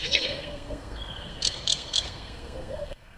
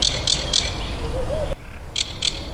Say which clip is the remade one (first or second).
first